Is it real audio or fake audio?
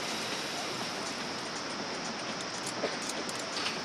real